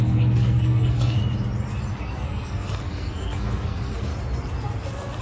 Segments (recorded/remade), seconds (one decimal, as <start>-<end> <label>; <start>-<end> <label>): 0.0-1.2 remade; 1.2-2.0 recorded; 2.0-4.1 remade; 4.1-5.2 recorded